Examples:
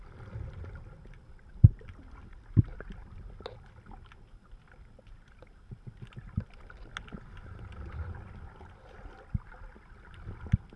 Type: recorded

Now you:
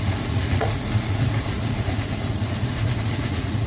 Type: remade